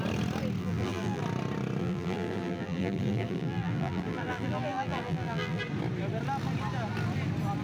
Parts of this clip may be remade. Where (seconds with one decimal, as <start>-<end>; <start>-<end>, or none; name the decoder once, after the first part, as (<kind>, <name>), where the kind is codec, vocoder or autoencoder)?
0.6-1.2 (vocoder, BigVGAN v2); 1.8-5.6